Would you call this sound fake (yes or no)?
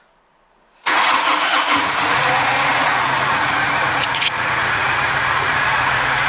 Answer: yes